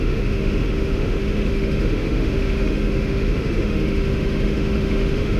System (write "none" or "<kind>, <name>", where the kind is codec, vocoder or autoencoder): autoencoder, DAC-VAE